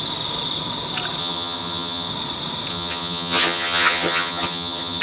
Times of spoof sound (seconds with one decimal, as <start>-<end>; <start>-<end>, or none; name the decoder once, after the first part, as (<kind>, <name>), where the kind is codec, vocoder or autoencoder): 1.2-2.1 (vocoder, HiFi-GAN); 2.7-5.0